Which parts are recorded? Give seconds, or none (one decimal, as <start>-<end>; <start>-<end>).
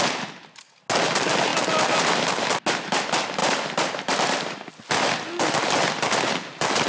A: 0.0-3.4; 4.7-6.9